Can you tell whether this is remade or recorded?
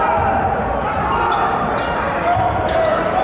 recorded